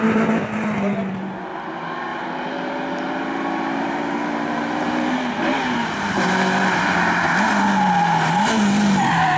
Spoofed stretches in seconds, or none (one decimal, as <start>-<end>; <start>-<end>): 2.1-7.3